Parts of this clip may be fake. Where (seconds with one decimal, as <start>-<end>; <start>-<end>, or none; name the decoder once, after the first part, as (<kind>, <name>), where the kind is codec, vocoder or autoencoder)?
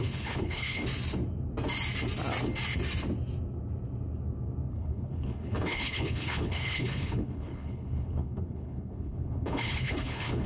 0.0-0.8 (codec, HILCodec); 4.7-10.5